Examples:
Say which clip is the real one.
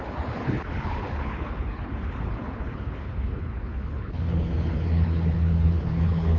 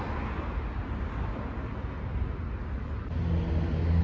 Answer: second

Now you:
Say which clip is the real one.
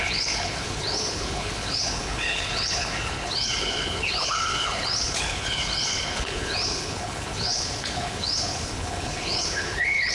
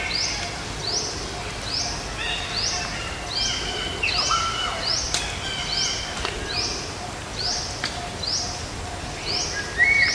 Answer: second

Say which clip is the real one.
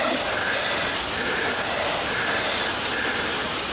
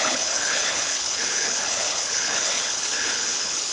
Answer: first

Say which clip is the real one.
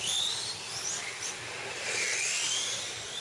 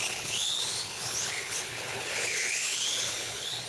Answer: first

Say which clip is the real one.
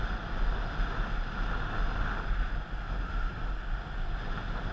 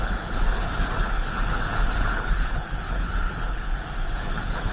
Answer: first